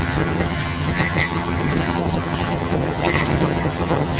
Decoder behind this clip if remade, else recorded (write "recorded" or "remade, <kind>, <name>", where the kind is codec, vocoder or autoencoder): remade, vocoder, HiFi-GAN